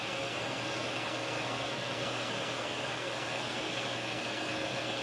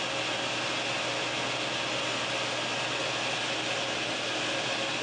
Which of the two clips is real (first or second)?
second